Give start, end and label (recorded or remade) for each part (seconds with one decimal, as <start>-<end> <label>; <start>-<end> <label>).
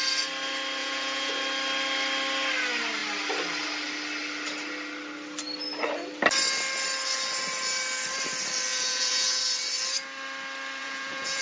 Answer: 0.0-0.8 recorded; 0.8-1.3 remade; 1.3-8.7 recorded; 8.7-9.4 remade; 9.4-10.8 recorded; 10.8-11.4 remade